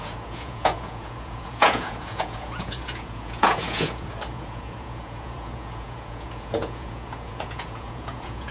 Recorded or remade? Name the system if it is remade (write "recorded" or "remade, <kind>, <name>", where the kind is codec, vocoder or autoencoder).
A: remade, vocoder, Vocos